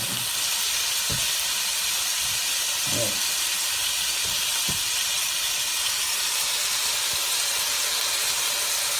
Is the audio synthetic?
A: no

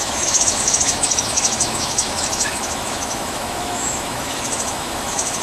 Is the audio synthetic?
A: yes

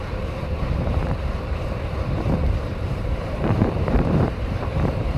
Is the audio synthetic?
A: yes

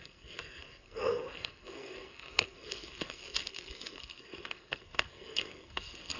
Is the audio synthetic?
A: yes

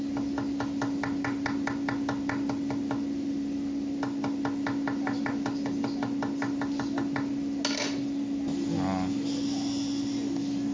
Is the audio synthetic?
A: no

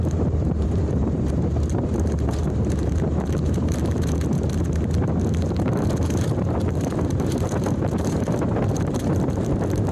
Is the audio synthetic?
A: yes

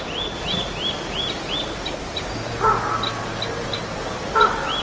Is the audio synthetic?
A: no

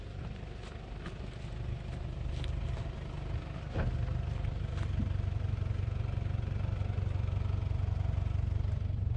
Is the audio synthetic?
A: no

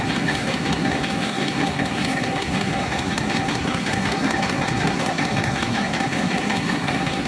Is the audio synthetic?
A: yes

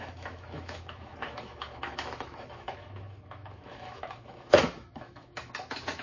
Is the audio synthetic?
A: yes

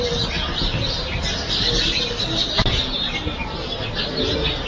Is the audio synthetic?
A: no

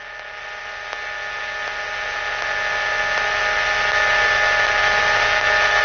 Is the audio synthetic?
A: no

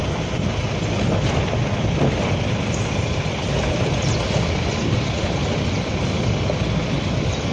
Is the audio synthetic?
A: no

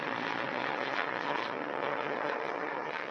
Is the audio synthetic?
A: yes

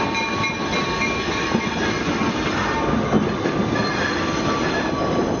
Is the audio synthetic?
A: no